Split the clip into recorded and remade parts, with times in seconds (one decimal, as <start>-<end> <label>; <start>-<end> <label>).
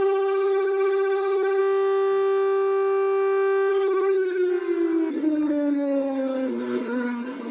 0.0-1.6 remade; 1.6-3.7 recorded; 3.7-4.5 remade; 4.5-5.1 recorded; 5.1-7.5 remade